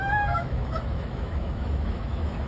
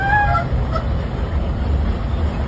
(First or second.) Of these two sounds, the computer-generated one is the first